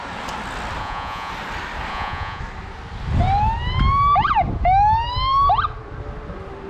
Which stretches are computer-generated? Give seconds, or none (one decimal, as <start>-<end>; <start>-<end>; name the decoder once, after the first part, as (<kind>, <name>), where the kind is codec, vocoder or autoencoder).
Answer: 0.8-1.3 (vocoder, Vocos); 1.9-2.4